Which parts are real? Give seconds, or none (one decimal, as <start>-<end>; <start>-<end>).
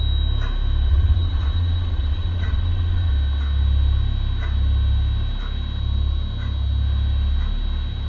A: 0.0-0.9; 3.1-8.1